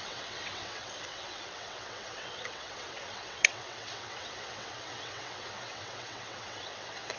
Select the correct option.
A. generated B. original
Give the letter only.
A